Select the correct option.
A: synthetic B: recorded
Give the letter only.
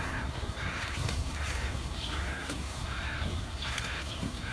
A